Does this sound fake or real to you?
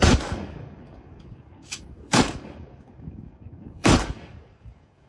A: fake